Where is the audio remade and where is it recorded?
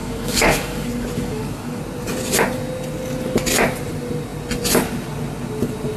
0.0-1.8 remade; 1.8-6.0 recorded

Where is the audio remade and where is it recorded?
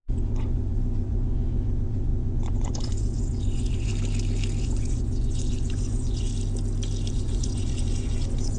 0.0-3.9 remade; 3.9-4.6 recorded; 4.6-6.3 remade; 6.3-7.1 recorded; 7.1-8.6 remade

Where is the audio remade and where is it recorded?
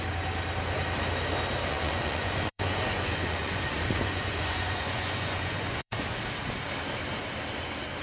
0.0-1.7 recorded; 1.7-6.2 remade; 6.2-8.0 recorded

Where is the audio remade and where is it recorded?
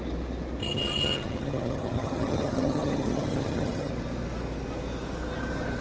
0.0-0.6 recorded; 0.6-3.9 remade; 3.9-5.8 recorded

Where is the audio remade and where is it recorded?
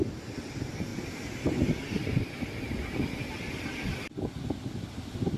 0.0-5.4 recorded